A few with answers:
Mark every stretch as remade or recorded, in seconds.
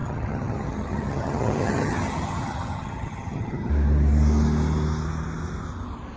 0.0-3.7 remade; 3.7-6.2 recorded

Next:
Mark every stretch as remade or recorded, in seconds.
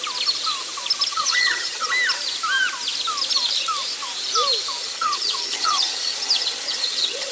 0.0-1.1 recorded; 1.1-1.9 remade; 1.9-4.8 recorded; 4.8-7.3 remade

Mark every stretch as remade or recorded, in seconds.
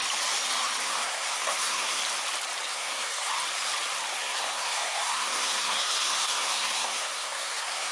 0.0-0.8 recorded; 0.8-2.0 remade; 2.0-2.7 recorded; 2.7-3.3 remade; 3.3-4.2 recorded; 4.2-7.9 remade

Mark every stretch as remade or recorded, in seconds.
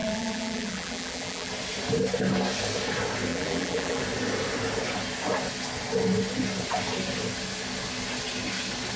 0.0-1.5 remade; 1.5-3.3 recorded; 3.3-4.0 remade; 4.0-9.0 recorded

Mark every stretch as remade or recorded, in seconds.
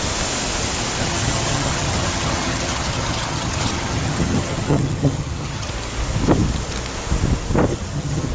0.0-1.0 recorded; 1.0-5.7 remade; 5.7-7.7 recorded; 7.7-8.3 remade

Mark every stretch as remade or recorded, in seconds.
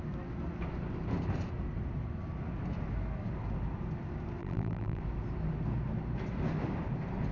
0.0-4.4 recorded; 4.4-5.0 remade; 5.0-7.3 recorded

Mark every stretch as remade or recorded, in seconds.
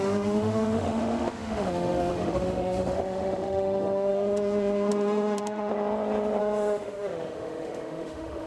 0.0-5.7 remade; 5.7-6.4 recorded; 6.4-8.5 remade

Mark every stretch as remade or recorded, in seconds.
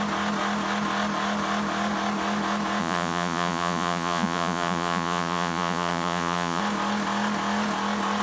0.0-2.8 recorded; 2.8-6.6 remade; 6.6-8.2 recorded